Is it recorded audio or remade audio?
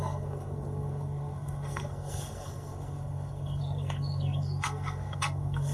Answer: remade